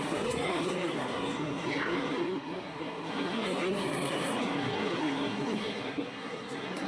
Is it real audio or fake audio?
fake